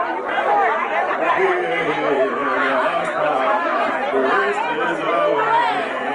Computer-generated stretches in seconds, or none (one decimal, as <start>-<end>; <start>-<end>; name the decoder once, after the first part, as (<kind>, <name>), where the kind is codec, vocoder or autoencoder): 2.4-3.8 (autoencoder, DAC-VAE)